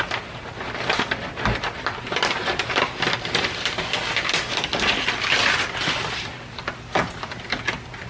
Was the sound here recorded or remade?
recorded